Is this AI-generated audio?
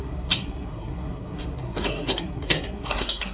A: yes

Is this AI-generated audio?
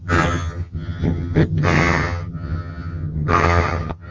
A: yes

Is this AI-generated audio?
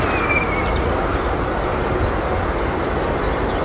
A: no